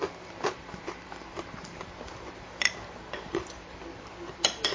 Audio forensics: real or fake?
fake